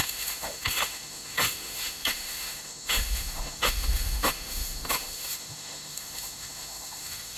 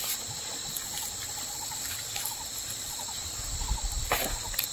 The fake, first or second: first